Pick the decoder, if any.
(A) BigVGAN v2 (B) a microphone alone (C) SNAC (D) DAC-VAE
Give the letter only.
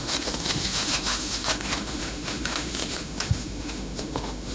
D